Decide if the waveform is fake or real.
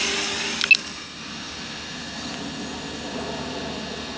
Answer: real